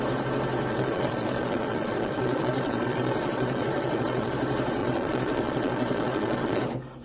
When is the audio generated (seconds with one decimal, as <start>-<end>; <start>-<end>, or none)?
0.7-4.3; 4.8-6.6